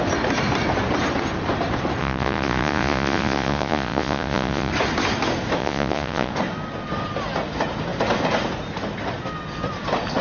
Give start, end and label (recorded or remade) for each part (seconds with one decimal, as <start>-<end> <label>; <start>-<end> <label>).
0.0-2.0 recorded; 2.0-4.7 remade; 4.7-5.6 recorded; 5.6-6.3 remade; 6.3-10.2 recorded